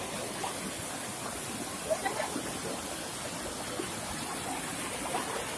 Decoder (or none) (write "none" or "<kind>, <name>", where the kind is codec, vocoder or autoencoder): none